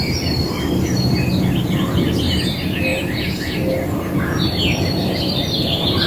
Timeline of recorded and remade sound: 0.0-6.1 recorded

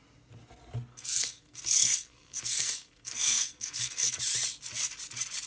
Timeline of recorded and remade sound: 0.0-0.9 recorded; 0.9-4.2 remade; 4.2-5.5 recorded

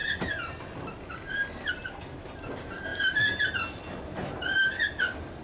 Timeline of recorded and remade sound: 0.0-5.4 recorded

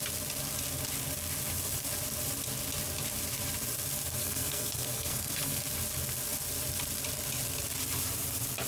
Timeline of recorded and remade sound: 0.0-4.2 recorded; 4.2-5.6 remade; 5.6-8.7 recorded